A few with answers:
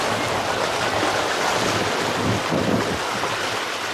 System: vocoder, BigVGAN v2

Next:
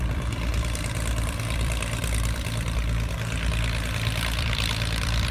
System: vocoder, BigVGAN v2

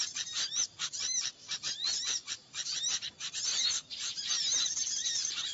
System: vocoder, BigVGAN v2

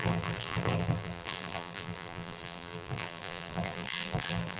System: vocoder, BigVGAN v2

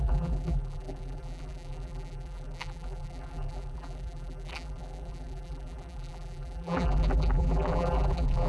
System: vocoder, BigVGAN v2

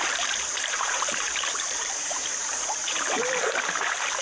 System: vocoder, BigVGAN v2